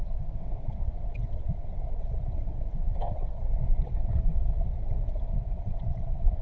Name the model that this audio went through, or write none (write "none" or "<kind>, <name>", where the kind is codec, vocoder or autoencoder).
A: vocoder, WaveNeXt